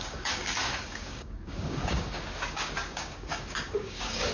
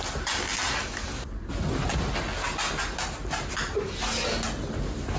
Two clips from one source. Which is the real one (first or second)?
second